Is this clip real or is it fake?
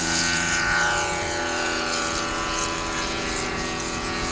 fake